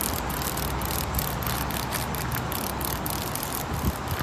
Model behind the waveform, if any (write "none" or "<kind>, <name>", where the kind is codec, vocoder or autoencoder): none